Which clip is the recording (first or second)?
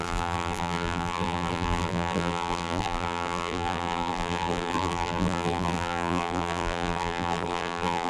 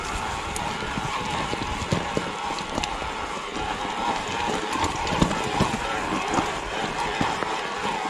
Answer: second